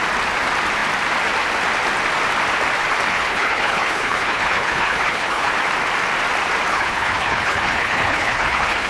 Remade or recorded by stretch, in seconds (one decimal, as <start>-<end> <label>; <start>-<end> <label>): 0.0-3.1 recorded; 3.1-5.5 remade; 5.5-6.7 recorded; 6.7-8.9 remade

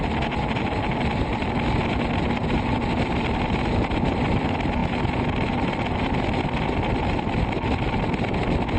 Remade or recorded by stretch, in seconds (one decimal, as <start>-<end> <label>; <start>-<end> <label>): 0.0-8.8 recorded

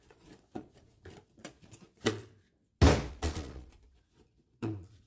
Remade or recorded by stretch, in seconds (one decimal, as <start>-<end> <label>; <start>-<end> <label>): 0.0-2.3 remade; 2.3-3.1 recorded; 3.1-5.1 remade

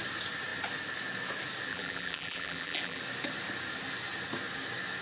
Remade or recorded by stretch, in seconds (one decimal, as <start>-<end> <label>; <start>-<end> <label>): 0.0-1.7 recorded; 1.7-3.0 remade; 3.0-5.0 recorded

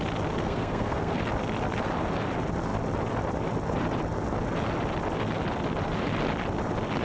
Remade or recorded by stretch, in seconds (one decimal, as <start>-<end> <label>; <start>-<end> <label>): 0.0-0.4 recorded; 0.4-1.2 remade; 1.2-7.0 recorded

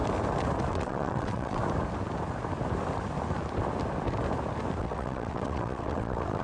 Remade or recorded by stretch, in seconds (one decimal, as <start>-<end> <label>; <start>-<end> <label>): 0.0-0.7 recorded; 0.7-1.6 remade; 1.6-4.8 recorded; 4.8-6.4 remade

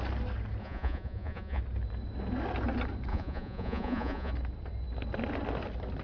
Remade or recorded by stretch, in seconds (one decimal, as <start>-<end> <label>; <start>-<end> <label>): 0.0-0.6 recorded; 0.6-1.6 remade; 1.6-3.1 recorded; 3.1-4.3 remade; 4.3-6.0 recorded